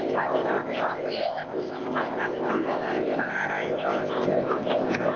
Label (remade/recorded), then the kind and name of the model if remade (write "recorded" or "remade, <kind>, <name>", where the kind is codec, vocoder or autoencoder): remade, codec, ZipCodec